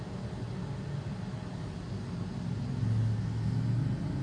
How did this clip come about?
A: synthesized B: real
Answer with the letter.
B